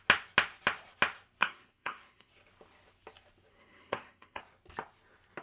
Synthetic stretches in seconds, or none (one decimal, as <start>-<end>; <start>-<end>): 1.4-2.3; 3.5-4.4